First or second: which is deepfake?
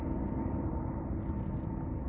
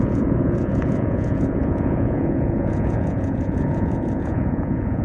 second